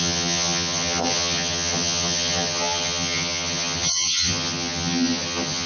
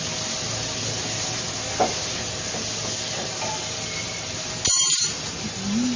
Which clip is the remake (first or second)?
first